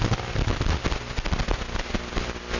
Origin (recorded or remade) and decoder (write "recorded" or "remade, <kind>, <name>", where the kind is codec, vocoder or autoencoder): recorded